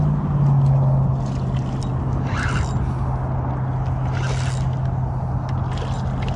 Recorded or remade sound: recorded